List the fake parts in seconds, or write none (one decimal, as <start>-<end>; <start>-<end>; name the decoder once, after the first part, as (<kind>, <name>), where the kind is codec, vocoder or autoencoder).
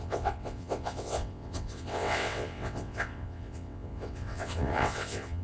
0.0-5.4 (vocoder, WaveNeXt)